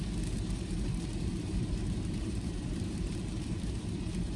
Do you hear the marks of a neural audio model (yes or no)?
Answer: yes